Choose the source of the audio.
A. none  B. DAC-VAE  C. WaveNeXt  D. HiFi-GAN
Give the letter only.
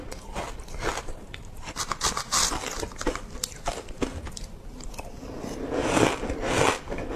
A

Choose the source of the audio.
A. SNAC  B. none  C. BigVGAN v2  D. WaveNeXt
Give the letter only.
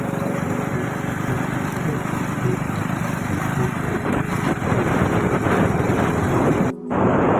C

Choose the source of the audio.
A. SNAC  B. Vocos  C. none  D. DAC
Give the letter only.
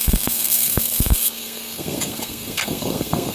A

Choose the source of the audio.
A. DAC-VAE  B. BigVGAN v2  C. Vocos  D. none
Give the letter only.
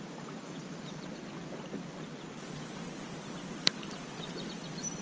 B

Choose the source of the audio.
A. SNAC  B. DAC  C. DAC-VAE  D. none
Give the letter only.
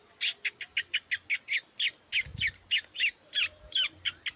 D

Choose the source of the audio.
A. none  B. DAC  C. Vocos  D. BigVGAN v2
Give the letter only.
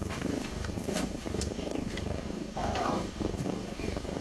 B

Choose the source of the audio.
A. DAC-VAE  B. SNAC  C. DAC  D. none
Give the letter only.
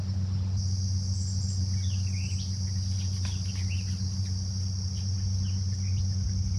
D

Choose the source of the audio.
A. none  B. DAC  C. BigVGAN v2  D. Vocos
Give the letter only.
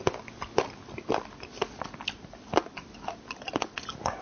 A